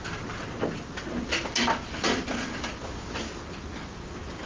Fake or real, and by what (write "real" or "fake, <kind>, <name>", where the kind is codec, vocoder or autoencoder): real